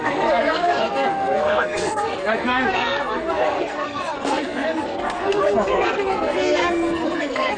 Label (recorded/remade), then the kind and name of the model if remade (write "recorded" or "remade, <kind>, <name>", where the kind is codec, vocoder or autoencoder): remade, codec, SNAC